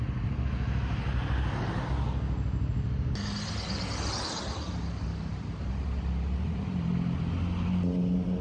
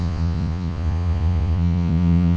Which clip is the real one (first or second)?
first